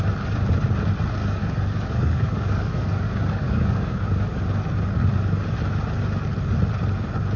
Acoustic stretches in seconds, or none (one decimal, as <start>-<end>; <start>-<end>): 0.0-1.2; 4.4-7.4